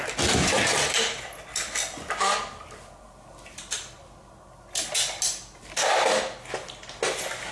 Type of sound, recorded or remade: recorded